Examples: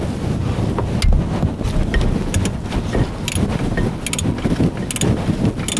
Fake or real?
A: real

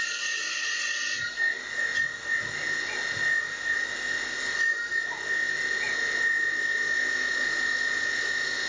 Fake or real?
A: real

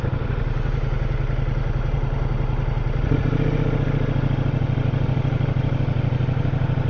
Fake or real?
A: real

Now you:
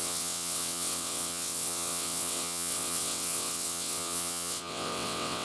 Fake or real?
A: fake